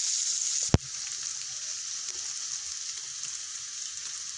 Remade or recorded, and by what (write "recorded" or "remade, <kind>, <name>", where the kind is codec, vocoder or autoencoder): recorded